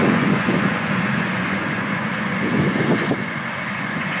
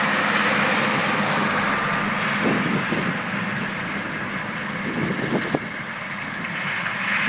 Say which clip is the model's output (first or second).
first